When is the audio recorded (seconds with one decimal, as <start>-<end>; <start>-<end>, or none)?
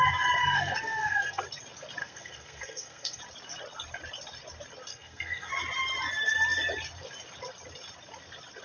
0.0-0.4; 1.4-2.0; 3.2-4.9; 5.5-8.6